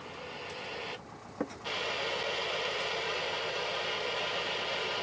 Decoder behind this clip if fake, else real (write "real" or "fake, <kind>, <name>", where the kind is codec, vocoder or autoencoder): real